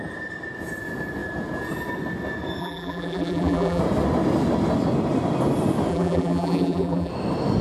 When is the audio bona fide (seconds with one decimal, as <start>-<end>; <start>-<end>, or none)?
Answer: 0.0-2.6; 3.8-5.9; 7.1-7.6